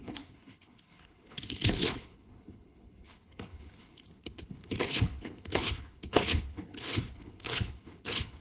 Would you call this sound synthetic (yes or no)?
yes